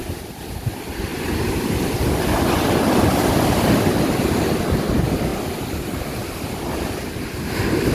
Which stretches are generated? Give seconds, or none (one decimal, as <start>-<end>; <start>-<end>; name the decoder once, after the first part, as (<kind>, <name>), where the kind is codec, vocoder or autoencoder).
0.0-5.3 (vocoder, BigVGAN v2); 6.5-7.9